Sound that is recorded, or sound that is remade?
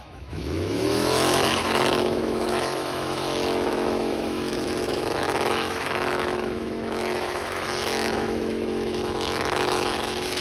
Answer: remade